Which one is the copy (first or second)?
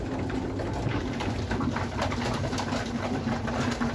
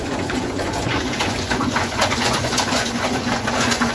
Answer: second